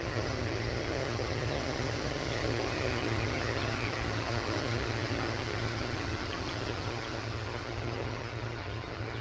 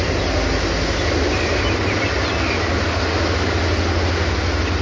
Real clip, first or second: second